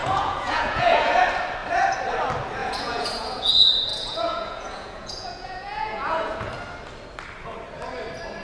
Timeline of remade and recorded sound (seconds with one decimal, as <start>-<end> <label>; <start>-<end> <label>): 0.0-1.1 remade; 1.1-2.6 recorded; 2.6-3.5 remade; 3.5-3.9 recorded; 3.9-6.5 remade; 6.5-8.4 recorded